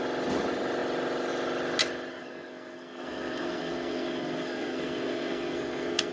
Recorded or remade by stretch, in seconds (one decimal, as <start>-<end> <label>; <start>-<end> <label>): 0.0-2.1 recorded; 2.1-6.1 remade